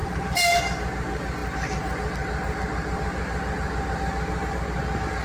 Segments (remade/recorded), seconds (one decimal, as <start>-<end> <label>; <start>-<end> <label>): 0.0-5.2 recorded